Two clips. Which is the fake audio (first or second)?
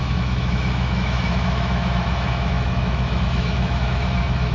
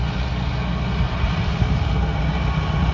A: first